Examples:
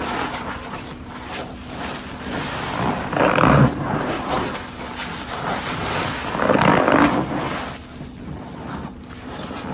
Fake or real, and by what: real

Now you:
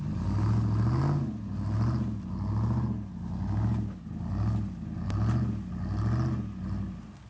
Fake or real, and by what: real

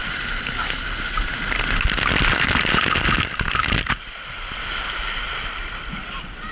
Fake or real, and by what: real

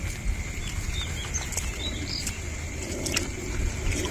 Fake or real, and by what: real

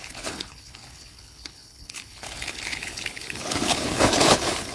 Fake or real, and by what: fake, codec, HILCodec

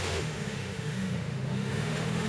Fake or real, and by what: fake, autoencoder, DAC-VAE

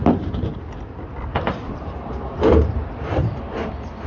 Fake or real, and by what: fake, vocoder, BigVGAN v2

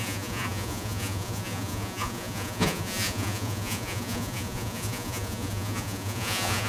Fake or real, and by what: fake, vocoder, Vocos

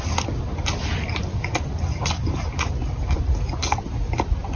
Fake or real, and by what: real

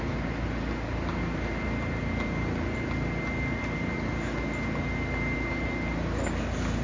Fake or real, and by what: real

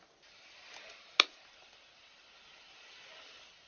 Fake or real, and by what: real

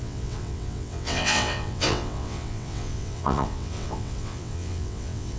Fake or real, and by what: fake, vocoder, WaveNeXt